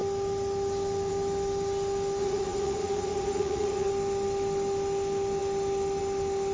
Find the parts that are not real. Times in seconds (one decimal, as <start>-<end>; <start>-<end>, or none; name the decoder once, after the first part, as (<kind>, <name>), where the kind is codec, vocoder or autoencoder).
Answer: 2.2-3.9 (vocoder, Vocos)